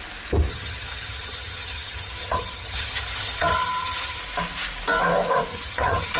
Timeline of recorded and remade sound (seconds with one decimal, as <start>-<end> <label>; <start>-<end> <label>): 0.0-0.5 recorded; 0.5-4.2 remade; 4.2-5.5 recorded; 5.5-6.2 remade